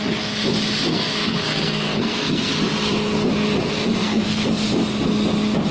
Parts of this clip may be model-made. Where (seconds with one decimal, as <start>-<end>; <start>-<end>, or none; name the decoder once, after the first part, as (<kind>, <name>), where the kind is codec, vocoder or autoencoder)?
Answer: 0.9-2.5 (codec, SNAC); 4.0-4.5